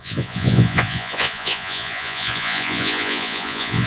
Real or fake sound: fake